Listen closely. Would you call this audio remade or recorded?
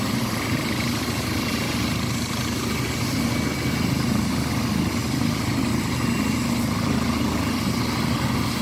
recorded